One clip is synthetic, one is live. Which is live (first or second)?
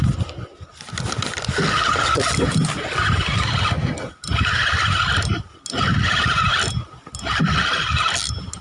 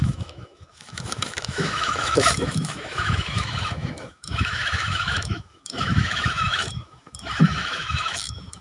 first